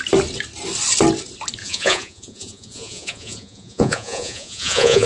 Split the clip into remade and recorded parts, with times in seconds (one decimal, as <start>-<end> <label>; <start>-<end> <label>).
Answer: 0.0-1.6 recorded; 1.6-5.1 remade